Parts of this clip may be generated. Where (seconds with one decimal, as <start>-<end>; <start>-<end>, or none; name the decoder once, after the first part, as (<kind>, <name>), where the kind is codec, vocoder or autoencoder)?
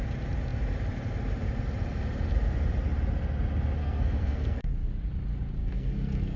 3.8-4.7 (codec, SNAC); 5.6-6.4